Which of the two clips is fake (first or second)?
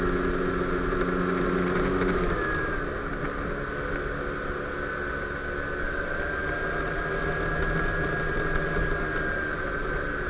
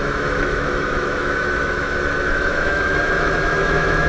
second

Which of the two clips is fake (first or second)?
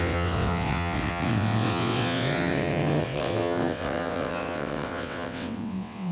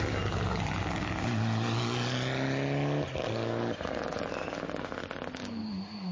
first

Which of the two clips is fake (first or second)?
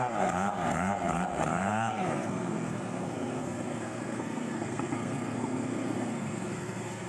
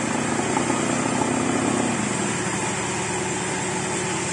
first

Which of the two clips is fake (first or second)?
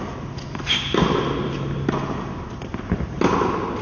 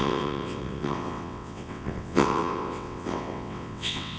second